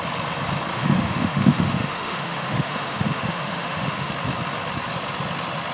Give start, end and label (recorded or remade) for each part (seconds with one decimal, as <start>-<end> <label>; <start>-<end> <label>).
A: 0.0-0.7 recorded; 0.7-4.1 remade; 4.1-5.7 recorded